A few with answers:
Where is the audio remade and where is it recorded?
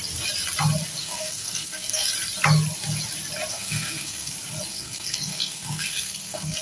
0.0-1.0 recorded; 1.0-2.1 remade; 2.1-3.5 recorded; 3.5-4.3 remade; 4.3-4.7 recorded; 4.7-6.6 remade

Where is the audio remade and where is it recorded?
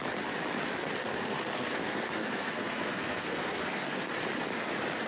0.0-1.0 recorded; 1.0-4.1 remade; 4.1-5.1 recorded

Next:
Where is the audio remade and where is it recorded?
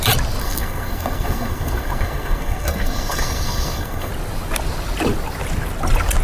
0.0-0.4 recorded; 0.4-4.1 remade; 4.1-6.2 recorded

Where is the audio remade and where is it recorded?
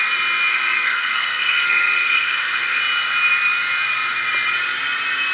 0.0-0.5 recorded; 0.5-2.8 remade; 2.8-5.3 recorded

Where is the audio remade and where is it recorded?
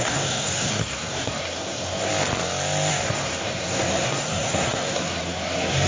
0.0-2.1 remade; 2.1-2.9 recorded; 2.9-5.9 remade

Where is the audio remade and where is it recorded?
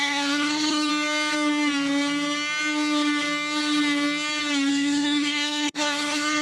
0.0-0.9 remade; 0.9-4.7 recorded; 4.7-6.4 remade